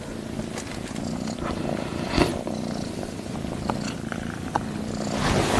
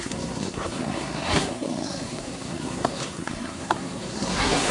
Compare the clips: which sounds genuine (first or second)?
first